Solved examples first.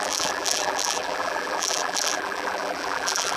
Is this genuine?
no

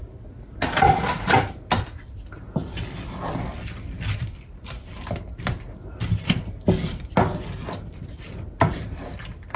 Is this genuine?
no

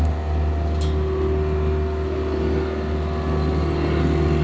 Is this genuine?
yes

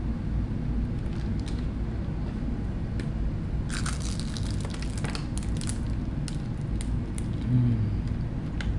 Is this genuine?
yes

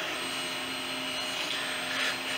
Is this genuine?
yes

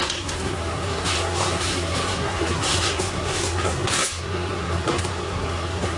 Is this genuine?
no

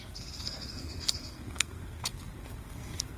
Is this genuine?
no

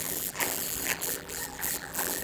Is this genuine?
no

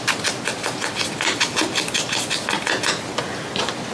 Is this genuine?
yes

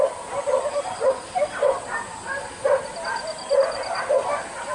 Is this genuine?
yes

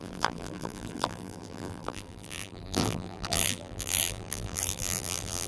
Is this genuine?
no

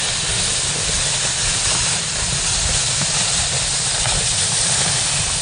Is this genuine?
yes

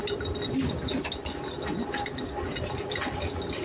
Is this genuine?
yes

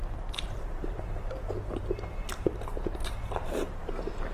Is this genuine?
no